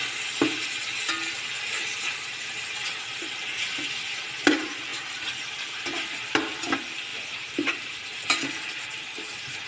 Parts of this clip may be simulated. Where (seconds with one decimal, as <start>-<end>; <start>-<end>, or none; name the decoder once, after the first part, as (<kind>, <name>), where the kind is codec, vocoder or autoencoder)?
7.1-9.7 (vocoder, BigVGAN v2)